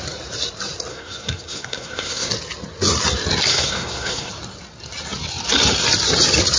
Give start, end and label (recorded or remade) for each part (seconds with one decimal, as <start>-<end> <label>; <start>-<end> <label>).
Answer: 0.0-0.9 recorded; 0.9-2.3 remade; 2.3-3.5 recorded; 3.5-4.3 remade; 4.3-6.6 recorded